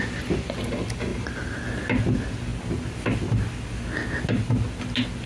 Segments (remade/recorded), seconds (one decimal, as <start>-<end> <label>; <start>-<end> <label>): 0.0-5.3 recorded